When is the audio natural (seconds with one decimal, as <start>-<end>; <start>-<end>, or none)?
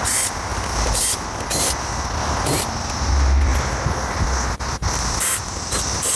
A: 0.0-6.2